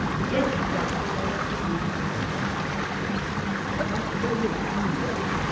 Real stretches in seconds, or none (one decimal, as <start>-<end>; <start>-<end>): 0.0-5.5